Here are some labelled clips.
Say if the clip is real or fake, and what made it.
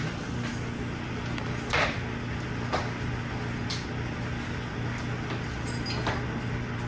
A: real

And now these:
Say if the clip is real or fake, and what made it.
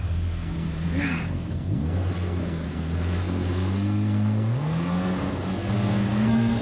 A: fake, codec, SNAC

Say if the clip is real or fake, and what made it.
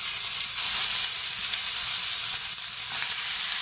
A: real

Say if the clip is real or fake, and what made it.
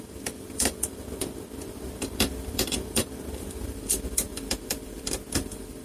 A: fake, vocoder, BigVGAN v2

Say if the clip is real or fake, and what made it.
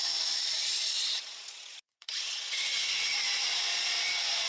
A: fake, vocoder, Vocos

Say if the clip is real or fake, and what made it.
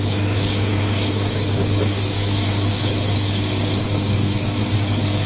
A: fake, codec, DAC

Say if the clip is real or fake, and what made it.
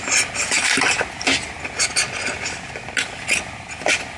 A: real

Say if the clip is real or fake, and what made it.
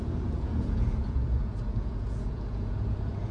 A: fake, vocoder, Vocos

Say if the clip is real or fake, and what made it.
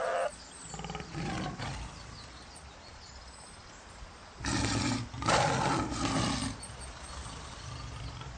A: real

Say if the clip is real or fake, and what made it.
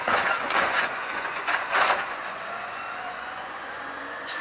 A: fake, vocoder, Vocos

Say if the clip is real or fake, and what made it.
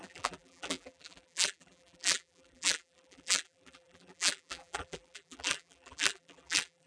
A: fake, vocoder, BigVGAN v2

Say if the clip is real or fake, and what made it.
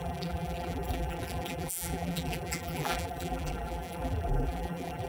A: fake, vocoder, BigVGAN v2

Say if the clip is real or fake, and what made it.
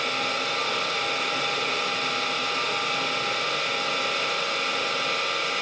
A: real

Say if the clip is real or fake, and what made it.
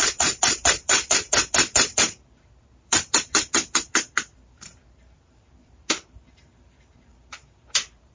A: fake, vocoder, BigVGAN v2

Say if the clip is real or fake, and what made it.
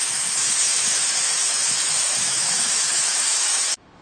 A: fake, autoencoder, DAC-VAE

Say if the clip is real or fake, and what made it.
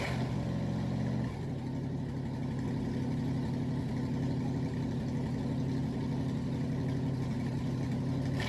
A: real